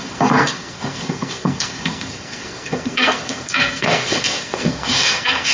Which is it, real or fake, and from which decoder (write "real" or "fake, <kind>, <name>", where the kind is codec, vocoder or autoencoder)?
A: fake, codec, SNAC